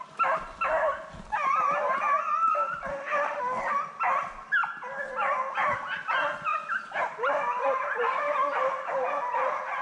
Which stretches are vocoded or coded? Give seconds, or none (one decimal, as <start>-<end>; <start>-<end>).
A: 2.9-3.6